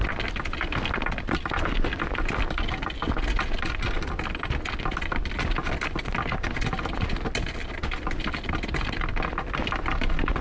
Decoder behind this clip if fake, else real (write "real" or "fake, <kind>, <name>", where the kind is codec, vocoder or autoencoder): real